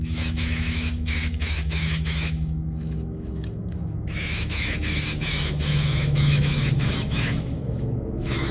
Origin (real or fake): fake